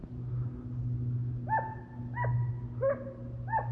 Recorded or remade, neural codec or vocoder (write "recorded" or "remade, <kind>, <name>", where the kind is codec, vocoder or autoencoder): recorded